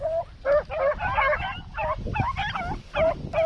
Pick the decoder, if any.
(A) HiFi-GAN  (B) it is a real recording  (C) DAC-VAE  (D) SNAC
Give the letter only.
B